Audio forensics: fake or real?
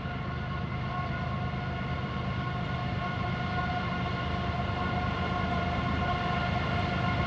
real